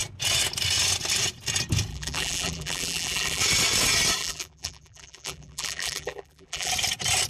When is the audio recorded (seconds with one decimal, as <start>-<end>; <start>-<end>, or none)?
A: 0.0-1.9; 3.4-4.2; 6.7-7.3